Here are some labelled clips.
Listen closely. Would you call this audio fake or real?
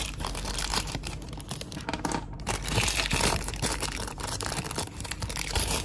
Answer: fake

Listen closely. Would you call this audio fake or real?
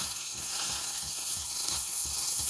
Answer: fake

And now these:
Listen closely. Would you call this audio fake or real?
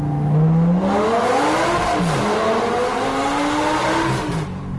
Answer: real